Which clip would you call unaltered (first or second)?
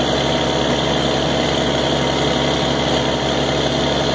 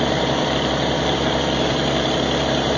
first